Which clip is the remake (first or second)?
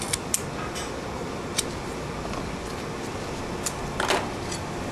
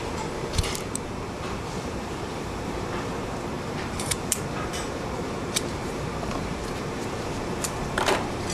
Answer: second